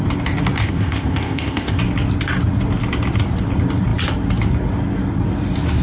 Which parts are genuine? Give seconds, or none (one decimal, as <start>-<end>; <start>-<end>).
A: 0.0-0.6; 1.8-5.8